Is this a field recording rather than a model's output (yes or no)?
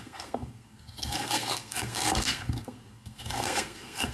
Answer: no